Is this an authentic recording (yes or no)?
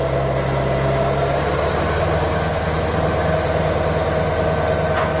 yes